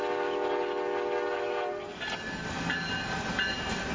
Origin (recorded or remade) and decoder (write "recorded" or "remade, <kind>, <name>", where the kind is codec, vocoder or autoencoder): recorded